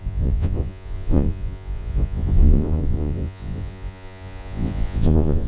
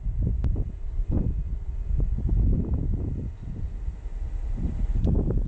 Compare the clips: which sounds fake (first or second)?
first